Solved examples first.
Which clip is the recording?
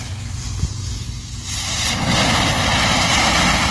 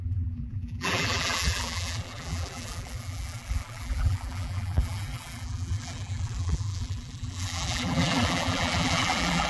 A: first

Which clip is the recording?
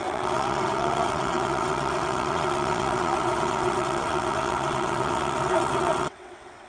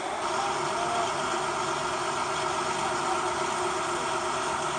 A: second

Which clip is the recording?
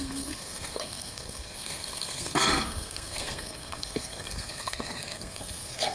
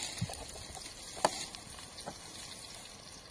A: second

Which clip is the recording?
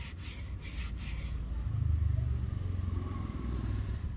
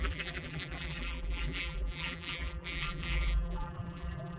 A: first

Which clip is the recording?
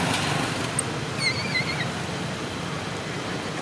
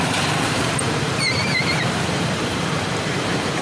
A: first